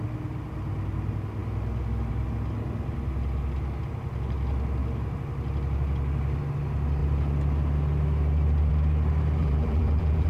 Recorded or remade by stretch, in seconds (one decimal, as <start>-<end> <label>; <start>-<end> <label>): 0.0-9.4 recorded; 9.4-10.3 remade